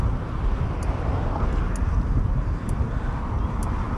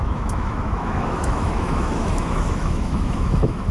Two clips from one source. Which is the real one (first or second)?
first